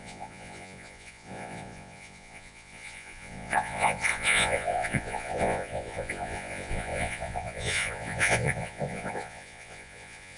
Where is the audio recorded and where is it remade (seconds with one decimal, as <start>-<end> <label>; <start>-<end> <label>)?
0.0-10.4 remade